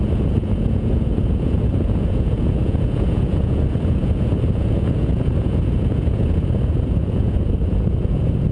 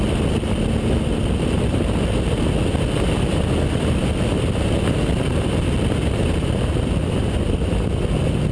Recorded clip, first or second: second